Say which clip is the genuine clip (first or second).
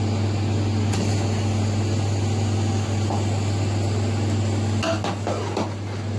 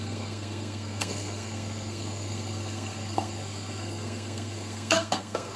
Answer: first